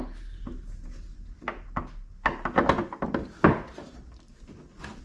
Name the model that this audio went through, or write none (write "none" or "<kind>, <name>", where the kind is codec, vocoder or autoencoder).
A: none